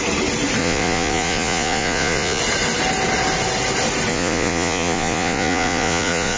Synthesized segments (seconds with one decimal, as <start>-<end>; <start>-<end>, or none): 0.6-2.4; 4.1-6.4

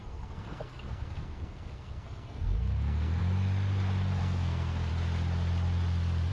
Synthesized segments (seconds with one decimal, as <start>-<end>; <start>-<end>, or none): 0.0-3.2; 4.2-4.9